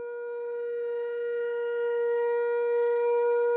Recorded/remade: remade